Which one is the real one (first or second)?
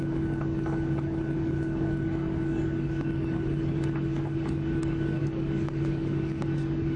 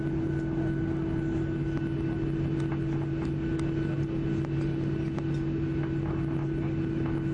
second